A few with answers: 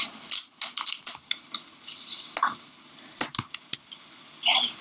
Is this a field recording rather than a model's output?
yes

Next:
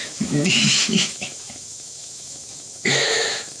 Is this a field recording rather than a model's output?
no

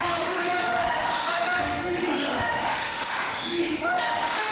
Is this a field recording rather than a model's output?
no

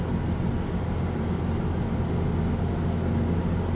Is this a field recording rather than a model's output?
yes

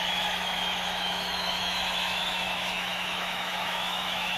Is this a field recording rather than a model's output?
no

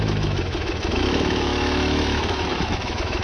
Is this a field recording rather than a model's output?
no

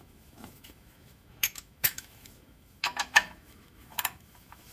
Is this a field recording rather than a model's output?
no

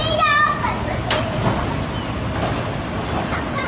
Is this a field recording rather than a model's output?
yes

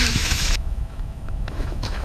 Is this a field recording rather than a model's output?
no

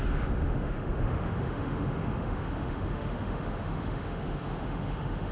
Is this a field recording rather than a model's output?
no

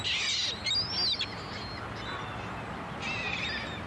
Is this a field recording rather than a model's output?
yes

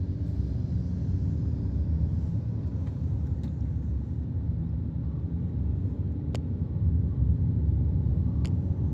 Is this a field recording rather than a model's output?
yes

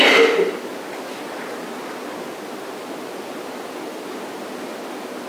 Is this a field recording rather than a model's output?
yes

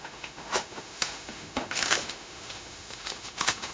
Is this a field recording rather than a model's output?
no